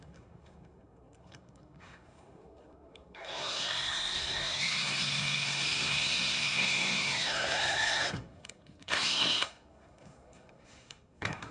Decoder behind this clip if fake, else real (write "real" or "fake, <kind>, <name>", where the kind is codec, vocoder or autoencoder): fake, codec, SNAC